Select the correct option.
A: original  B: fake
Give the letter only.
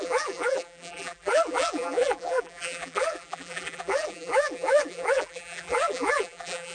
B